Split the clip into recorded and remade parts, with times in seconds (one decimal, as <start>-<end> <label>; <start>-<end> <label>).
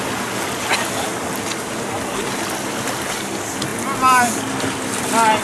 0.0-5.4 recorded